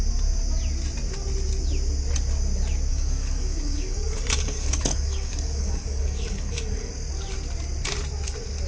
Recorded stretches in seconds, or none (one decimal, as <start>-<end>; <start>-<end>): 0.0-2.9; 6.9-8.7